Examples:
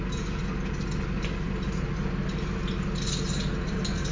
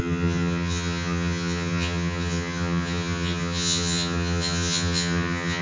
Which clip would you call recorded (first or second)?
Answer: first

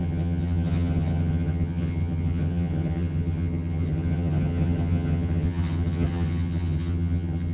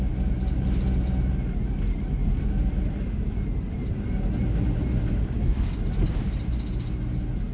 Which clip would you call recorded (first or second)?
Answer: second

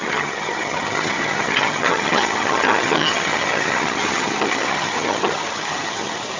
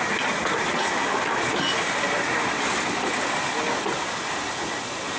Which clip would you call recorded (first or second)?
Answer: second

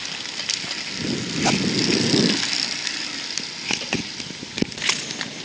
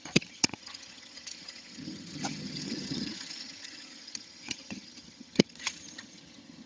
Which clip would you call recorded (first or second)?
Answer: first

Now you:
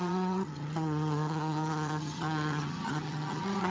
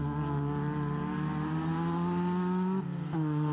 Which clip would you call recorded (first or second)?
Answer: second